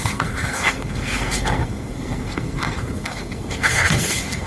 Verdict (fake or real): fake